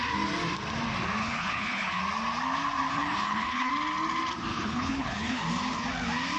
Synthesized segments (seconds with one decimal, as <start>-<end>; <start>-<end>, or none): 1.2-2.0; 2.9-3.7; 4.5-5.4